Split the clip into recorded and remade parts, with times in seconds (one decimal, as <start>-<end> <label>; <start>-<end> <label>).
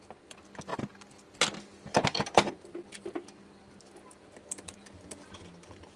0.0-6.0 recorded